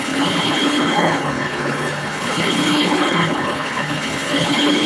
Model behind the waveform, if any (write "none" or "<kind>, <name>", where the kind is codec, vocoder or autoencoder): codec, HILCodec